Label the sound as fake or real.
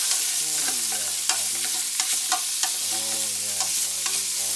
real